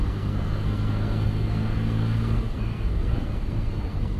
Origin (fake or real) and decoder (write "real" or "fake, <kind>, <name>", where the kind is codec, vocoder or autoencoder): fake, codec, SNAC